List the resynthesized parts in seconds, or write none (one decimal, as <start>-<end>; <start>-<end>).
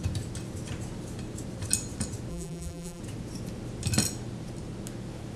2.3-3.0